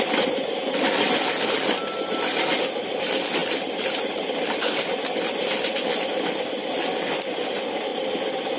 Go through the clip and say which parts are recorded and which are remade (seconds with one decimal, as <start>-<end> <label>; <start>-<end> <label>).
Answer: 0.0-8.6 recorded